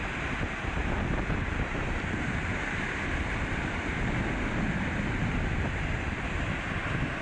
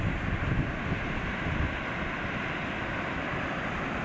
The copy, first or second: second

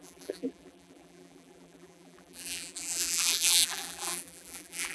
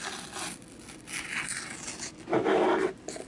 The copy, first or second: first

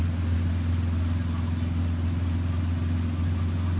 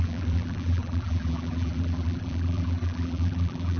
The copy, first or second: second